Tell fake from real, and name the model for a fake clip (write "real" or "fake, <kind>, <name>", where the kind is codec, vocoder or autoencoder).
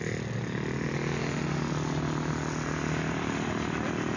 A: real